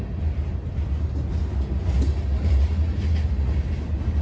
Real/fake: real